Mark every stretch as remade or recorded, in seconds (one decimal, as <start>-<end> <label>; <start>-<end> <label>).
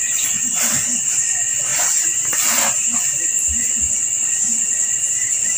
0.0-1.7 recorded; 1.7-3.7 remade; 3.7-4.8 recorded; 4.8-5.6 remade